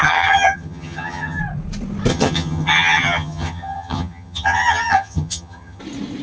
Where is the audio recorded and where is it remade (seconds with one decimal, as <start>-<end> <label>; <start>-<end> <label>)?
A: 0.0-1.4 remade; 1.4-2.1 recorded; 2.1-5.8 remade; 5.8-6.2 recorded